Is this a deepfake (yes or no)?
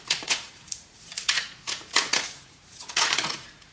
yes